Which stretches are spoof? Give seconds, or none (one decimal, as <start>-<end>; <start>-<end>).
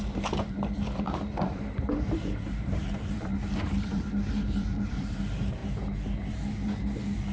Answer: 0.0-5.6; 6.3-7.3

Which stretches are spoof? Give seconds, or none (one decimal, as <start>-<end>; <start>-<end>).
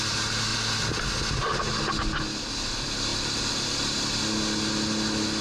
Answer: none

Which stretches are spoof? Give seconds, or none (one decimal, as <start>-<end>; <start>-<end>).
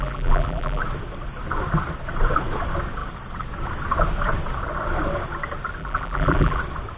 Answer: 0.0-0.8; 5.8-6.6